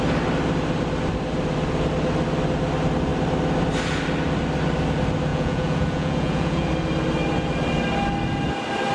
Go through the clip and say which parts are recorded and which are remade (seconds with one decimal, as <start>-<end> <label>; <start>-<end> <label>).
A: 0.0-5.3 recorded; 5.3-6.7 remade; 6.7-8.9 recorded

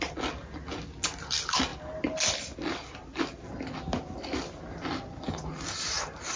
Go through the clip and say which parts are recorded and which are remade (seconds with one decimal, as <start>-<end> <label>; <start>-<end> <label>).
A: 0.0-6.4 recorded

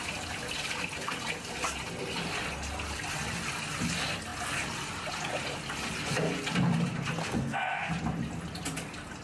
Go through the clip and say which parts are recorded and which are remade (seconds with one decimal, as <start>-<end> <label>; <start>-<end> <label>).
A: 0.0-7.2 recorded; 7.2-7.9 remade; 7.9-9.2 recorded

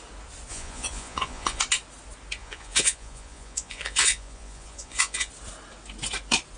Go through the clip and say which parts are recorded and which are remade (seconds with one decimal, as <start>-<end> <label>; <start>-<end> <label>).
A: 0.0-0.5 recorded; 0.5-1.6 remade; 1.6-2.4 recorded; 2.4-5.3 remade; 5.3-6.6 recorded

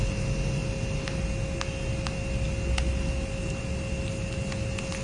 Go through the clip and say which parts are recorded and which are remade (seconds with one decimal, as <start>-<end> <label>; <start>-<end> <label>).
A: 0.0-5.0 recorded